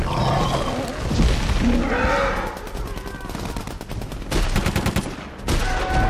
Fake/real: real